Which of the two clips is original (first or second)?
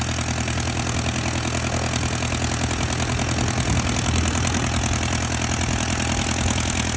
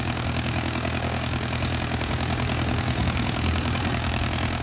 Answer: first